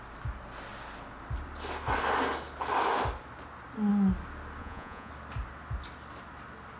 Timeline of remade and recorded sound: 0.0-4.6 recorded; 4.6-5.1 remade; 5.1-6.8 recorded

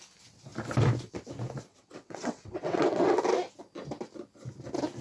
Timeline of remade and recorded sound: 0.0-1.7 recorded; 1.7-3.2 remade; 3.2-5.0 recorded

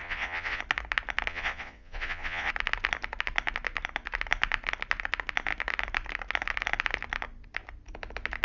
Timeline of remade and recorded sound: 0.0-0.6 remade; 0.6-1.3 recorded; 1.3-2.5 remade; 2.5-8.4 recorded

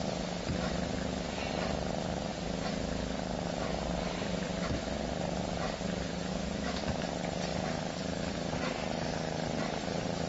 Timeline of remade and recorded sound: 0.0-6.3 recorded; 6.3-7.0 remade; 7.0-10.3 recorded